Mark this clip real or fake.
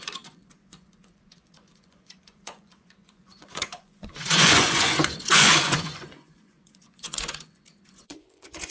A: fake